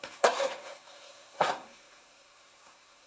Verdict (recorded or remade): remade